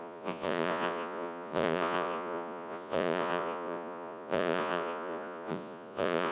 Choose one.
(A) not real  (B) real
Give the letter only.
A